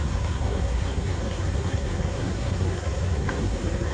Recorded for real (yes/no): no